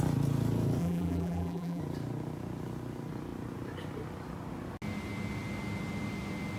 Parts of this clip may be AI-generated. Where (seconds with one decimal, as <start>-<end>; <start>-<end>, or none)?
0.8-1.8

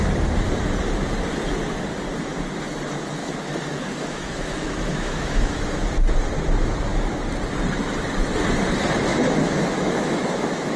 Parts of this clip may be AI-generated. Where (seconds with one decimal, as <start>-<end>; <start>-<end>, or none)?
3.2-5.6; 9.1-10.8

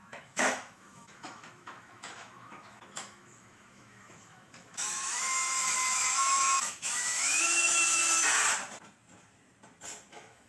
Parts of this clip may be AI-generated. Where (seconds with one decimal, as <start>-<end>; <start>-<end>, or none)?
0.0-8.0; 10.1-10.5

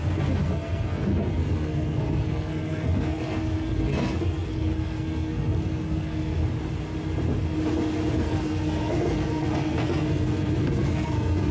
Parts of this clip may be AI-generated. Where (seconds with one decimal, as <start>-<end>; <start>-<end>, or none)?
0.0-6.4; 8.2-11.5

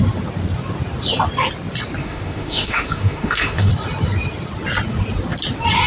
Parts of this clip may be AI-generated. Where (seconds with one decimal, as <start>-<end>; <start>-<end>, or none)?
2.0-3.7

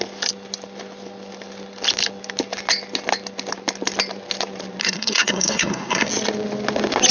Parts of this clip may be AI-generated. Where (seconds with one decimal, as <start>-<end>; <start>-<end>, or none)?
4.8-6.1